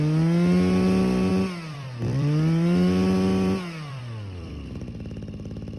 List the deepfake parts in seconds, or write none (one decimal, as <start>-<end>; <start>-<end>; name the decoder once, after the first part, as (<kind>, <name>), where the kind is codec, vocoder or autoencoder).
1.3-4.8 (vocoder, BigVGAN v2)

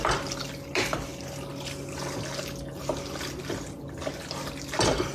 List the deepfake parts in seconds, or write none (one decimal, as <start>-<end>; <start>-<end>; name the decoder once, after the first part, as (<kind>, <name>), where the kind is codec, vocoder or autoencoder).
none

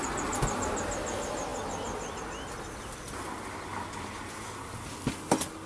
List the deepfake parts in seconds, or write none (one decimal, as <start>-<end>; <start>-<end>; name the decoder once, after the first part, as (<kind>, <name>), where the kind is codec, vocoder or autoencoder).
none

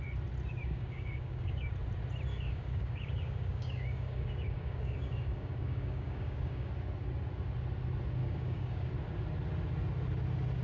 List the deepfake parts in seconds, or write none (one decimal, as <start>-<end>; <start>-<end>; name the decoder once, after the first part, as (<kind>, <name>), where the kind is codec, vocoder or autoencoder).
0.5-1.7 (codec, DAC); 2.3-6.7; 8.2-8.9

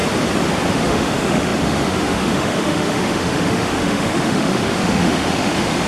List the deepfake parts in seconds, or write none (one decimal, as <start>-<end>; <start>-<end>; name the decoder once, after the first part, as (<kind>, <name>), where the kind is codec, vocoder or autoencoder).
0.7-5.9 (autoencoder, DAC-VAE)